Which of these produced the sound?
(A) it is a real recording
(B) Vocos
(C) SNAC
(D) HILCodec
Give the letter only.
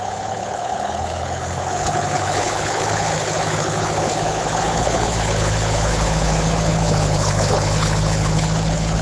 D